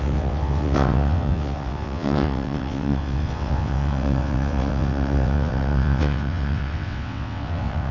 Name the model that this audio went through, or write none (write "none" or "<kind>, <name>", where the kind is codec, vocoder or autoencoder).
vocoder, WaveNeXt